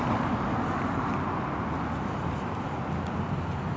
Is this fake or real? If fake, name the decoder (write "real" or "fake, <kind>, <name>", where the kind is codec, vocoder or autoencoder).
real